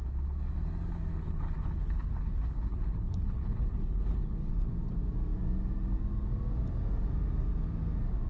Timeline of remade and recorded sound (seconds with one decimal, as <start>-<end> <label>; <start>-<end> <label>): 0.0-1.1 recorded; 1.1-4.5 remade; 4.5-8.3 recorded